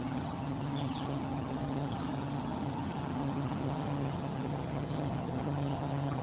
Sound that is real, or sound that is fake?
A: fake